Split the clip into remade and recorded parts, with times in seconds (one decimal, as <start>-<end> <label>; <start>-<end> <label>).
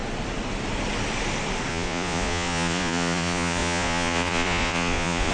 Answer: 0.0-1.7 recorded; 1.7-5.3 remade